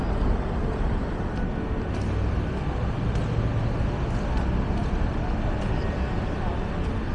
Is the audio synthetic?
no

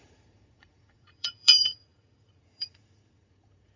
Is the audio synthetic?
yes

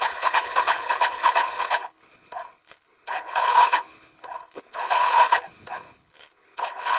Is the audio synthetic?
yes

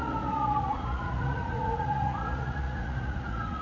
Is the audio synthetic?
yes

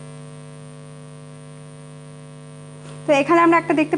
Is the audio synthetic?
no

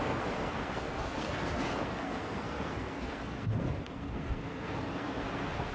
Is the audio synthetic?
yes